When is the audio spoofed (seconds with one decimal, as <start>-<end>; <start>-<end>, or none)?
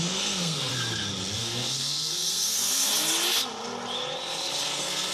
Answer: 0.0-0.7; 1.4-2.9; 4.6-5.1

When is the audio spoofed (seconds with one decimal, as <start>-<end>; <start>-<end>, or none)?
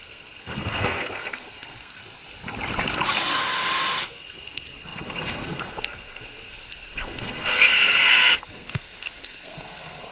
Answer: 0.0-2.0; 4.0-10.1